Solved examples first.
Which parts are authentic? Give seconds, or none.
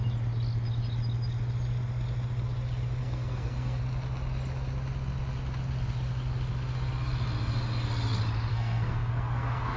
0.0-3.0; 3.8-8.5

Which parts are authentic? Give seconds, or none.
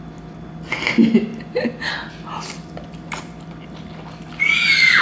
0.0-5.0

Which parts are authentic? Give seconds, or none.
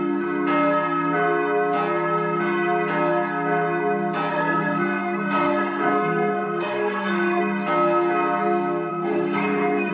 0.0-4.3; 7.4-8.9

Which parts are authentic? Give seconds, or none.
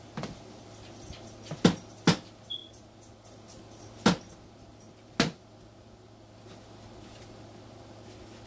0.0-8.5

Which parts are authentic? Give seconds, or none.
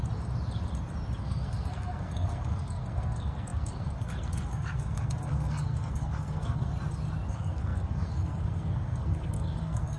0.0-1.2; 6.7-7.3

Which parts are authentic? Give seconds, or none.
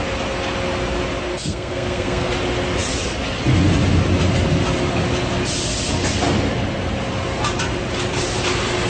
0.0-1.3; 2.3-8.9